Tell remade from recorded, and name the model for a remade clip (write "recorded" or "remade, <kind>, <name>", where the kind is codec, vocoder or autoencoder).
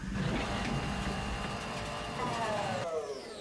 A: remade, vocoder, BigVGAN v2